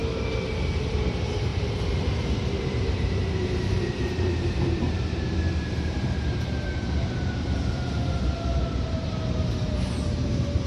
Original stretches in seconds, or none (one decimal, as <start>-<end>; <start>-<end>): 0.0-0.9